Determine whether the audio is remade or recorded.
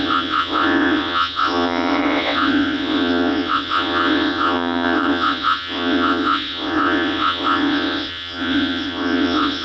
remade